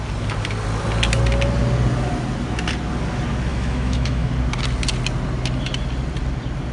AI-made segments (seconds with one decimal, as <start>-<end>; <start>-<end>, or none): 3.5-4.3